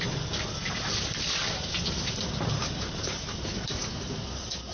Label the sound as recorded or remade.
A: recorded